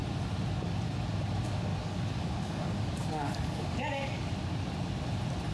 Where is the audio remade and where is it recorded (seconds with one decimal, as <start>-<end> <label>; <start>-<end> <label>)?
0.0-1.7 recorded; 1.7-4.3 remade; 4.3-5.5 recorded